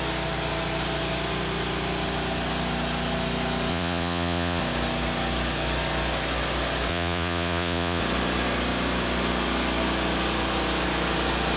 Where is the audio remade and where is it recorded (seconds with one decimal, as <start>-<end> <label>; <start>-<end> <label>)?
0.0-3.7 recorded; 3.7-4.6 remade; 4.6-6.9 recorded; 6.9-8.0 remade; 8.0-11.6 recorded